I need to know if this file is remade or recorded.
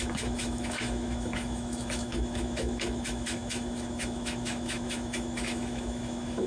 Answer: remade